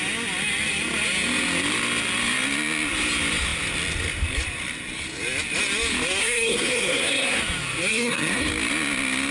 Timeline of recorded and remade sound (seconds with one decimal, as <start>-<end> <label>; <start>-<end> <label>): 0.0-6.2 recorded; 6.2-7.4 remade; 7.4-7.9 recorded; 7.9-8.5 remade; 8.5-9.3 recorded